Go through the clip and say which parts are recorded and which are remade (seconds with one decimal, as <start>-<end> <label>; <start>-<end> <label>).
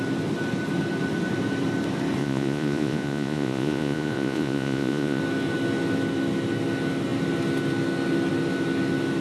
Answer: 0.0-2.2 recorded; 2.2-5.2 remade; 5.2-9.2 recorded